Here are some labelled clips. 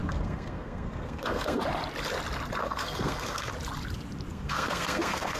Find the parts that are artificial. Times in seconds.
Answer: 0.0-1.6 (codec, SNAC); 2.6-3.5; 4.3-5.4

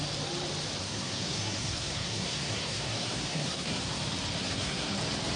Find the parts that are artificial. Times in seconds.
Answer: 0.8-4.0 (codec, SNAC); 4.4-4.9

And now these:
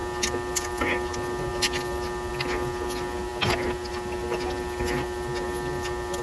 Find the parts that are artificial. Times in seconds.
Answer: none

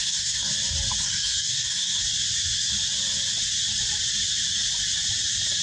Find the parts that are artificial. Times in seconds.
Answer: 0.0-0.5 (codec, SNAC); 1.0-2.0

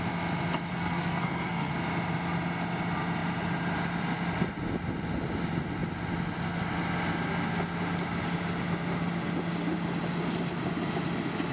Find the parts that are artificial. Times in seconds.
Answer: 0.7-1.7 (codec, SNAC)